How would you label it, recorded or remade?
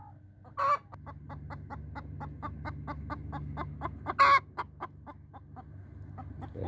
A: recorded